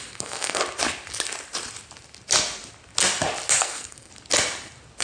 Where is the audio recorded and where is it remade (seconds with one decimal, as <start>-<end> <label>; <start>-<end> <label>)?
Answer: 0.0-0.6 remade; 0.6-3.6 recorded; 3.6-4.1 remade; 4.1-5.0 recorded